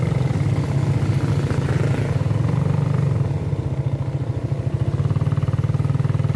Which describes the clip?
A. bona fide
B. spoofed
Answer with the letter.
A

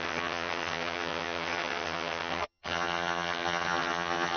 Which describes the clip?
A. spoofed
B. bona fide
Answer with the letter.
A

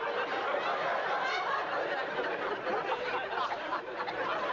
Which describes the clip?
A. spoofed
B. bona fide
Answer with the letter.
B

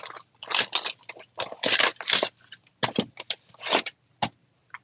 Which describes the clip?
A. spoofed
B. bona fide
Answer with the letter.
B